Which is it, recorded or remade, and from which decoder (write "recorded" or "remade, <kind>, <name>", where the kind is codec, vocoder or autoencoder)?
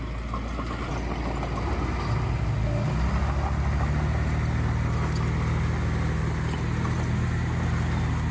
recorded